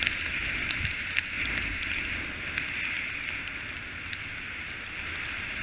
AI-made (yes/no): no